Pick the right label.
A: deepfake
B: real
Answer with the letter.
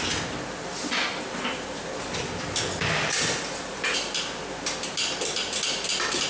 B